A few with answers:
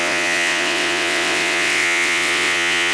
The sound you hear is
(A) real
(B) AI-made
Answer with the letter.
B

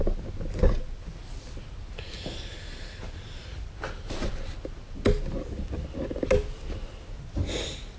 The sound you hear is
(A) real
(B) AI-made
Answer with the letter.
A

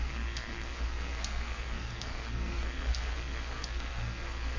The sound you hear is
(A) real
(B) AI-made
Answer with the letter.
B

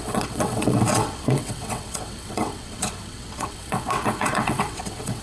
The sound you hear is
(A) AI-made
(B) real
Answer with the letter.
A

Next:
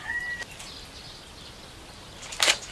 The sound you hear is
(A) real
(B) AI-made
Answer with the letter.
A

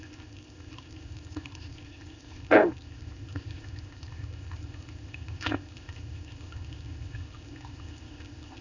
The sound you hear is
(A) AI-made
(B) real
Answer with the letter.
A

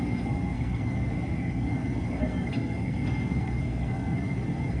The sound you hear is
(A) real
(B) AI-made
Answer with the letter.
B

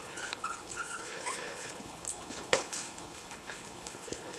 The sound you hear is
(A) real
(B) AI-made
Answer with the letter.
B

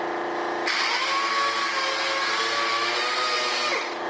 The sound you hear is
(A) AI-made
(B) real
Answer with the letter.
B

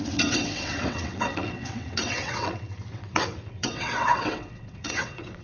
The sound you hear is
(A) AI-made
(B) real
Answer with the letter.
A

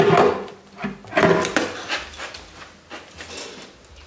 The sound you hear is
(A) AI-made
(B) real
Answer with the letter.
B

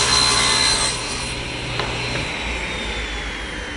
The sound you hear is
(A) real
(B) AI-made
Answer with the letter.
A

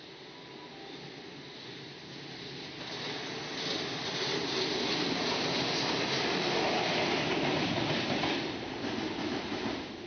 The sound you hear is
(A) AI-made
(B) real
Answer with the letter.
B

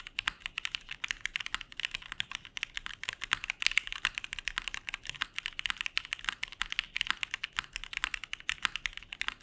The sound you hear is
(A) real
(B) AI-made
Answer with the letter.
A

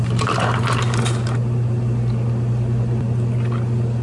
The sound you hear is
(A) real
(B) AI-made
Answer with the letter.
A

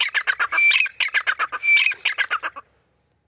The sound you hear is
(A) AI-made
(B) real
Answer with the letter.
B